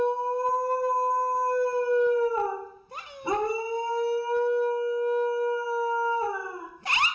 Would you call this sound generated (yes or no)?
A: no